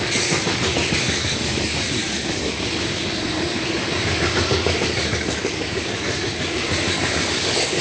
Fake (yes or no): yes